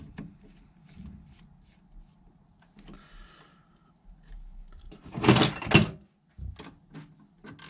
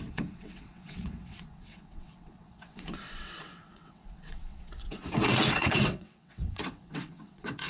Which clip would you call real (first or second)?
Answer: first